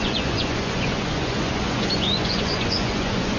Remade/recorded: remade